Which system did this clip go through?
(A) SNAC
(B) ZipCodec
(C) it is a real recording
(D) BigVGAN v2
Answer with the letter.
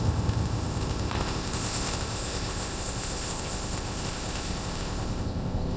B